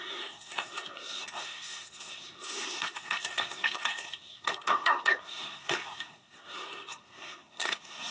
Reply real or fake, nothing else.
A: fake